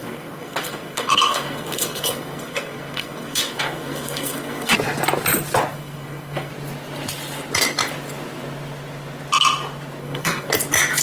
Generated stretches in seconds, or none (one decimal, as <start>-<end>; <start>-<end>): 0.0-4.7; 5.7-6.5; 10.0-10.5

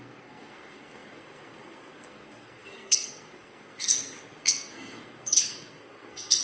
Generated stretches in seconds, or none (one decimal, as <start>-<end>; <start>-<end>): 0.0-6.4

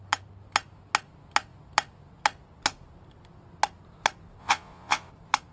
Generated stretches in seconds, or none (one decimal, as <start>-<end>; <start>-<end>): 4.4-5.1

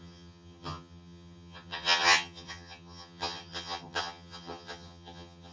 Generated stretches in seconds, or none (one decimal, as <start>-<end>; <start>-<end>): 0.0-5.5

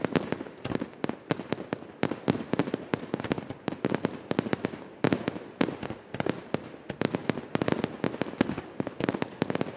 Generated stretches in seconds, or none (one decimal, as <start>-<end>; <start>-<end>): none

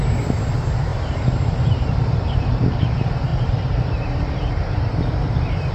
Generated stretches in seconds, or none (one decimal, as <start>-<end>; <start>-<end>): 0.9-2.8; 3.3-4.8

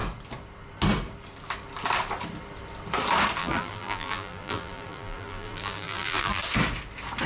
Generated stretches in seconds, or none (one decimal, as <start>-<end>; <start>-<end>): 3.4-6.4

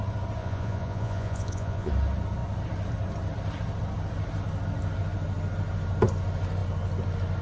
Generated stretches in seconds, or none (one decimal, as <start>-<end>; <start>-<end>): 0.4-1.9